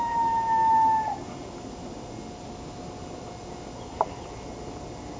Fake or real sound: real